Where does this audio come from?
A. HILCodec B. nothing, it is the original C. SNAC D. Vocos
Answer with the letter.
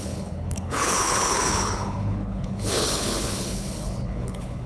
A